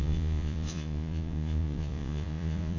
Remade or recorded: remade